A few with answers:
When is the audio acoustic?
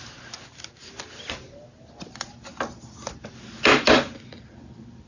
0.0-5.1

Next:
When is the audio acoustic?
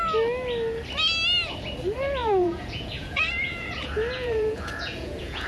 0.0-2.2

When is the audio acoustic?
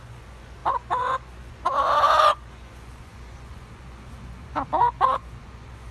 none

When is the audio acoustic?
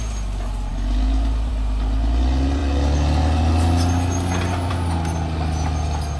0.0-6.2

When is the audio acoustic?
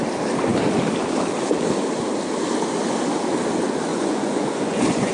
0.0-3.9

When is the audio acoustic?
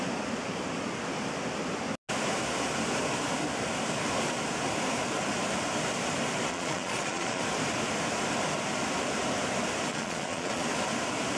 0.0-6.5; 7.4-9.9; 10.7-11.4